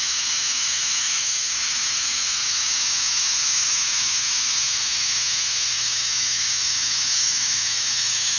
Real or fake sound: fake